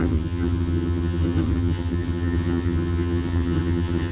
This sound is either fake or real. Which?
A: fake